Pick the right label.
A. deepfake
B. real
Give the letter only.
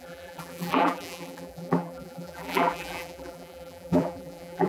A